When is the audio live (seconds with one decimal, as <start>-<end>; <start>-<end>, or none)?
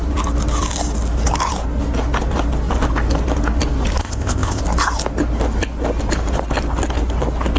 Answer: 0.0-4.0; 4.6-7.6